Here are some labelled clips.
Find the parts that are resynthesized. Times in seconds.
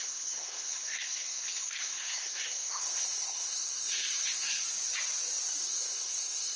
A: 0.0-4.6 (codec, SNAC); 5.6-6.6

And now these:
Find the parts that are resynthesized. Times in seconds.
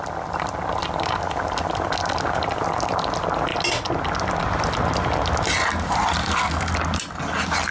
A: 6.2-6.7 (codec, SNAC)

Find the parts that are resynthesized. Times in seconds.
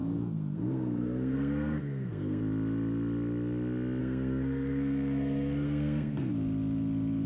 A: 0.0-2.4 (codec, SNAC); 4.0-6.3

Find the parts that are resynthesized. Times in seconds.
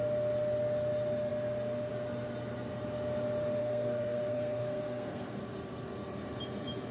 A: 3.6-5.4 (codec, SNAC)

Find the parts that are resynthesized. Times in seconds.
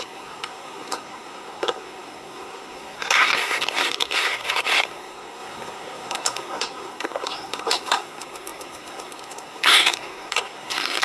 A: 0.0-11.0 (codec, SNAC)